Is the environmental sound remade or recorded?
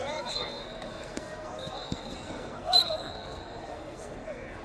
remade